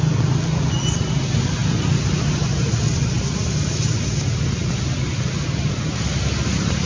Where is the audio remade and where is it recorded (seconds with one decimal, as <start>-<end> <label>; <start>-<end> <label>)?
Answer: 0.0-6.9 recorded